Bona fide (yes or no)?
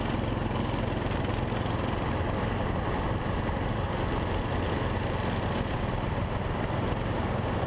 yes